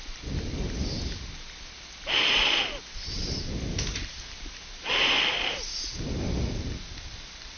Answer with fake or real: real